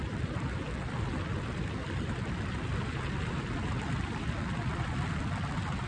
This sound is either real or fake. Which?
real